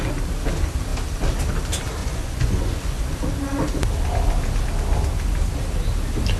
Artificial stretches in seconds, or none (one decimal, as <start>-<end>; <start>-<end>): 2.0-3.0